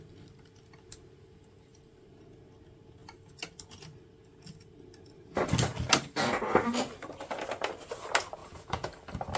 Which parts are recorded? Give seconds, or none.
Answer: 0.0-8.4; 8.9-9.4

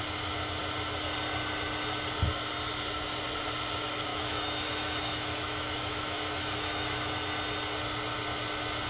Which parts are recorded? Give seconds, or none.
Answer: 0.0-4.1; 7.1-8.9

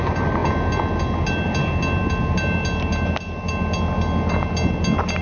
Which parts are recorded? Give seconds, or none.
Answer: 0.0-5.2

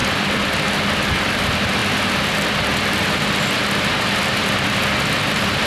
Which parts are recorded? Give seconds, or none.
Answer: 0.0-5.7

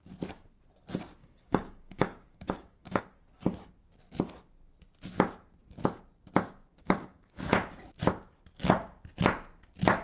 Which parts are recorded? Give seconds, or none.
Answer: 0.0-1.2; 3.0-6.7; 7.4-10.0